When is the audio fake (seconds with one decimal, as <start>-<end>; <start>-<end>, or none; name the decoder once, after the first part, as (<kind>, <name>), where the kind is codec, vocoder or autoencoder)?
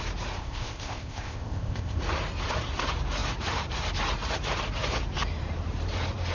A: 0.4-2.0 (codec, ZipCodec)